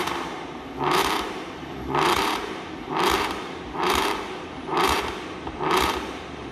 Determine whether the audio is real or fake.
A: fake